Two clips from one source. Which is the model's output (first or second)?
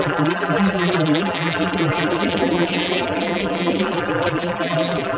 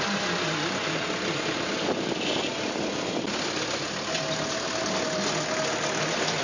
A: first